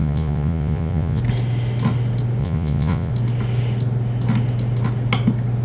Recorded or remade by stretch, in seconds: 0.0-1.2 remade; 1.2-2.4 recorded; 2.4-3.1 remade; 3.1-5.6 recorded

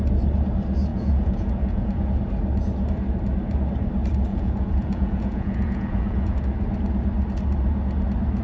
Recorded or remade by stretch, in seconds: 0.0-0.9 recorded; 0.9-2.1 remade; 2.1-4.3 recorded; 4.3-6.4 remade; 6.4-8.4 recorded